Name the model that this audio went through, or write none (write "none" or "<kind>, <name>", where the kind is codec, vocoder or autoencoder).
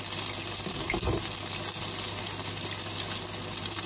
none